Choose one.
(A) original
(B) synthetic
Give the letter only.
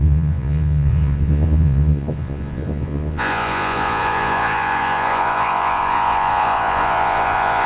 B